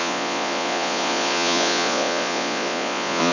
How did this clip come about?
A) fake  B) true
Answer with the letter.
A